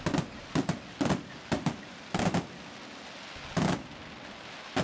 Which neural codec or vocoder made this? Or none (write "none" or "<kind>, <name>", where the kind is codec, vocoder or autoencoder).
none